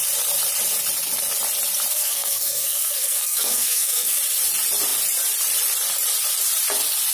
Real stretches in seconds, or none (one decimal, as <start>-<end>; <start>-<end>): 0.0-1.9; 4.2-7.1